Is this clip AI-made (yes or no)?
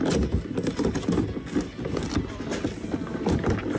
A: no